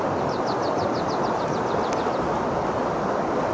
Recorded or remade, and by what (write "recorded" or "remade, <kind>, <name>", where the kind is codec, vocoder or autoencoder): recorded